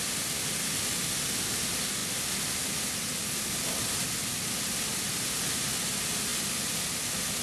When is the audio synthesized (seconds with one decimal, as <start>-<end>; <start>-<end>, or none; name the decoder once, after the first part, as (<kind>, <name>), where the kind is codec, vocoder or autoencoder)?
none